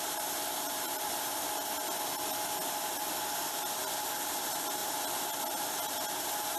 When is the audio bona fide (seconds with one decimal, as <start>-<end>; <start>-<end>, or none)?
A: 0.0-6.6